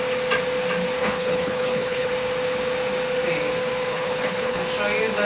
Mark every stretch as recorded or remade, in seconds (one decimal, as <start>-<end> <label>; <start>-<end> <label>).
0.0-1.0 recorded; 1.0-2.1 remade; 2.1-3.9 recorded; 3.9-4.6 remade; 4.6-5.2 recorded

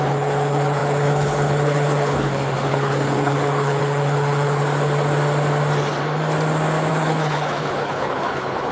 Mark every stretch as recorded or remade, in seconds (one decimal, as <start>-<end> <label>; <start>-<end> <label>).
0.0-4.6 remade; 4.6-6.9 recorded; 6.9-8.7 remade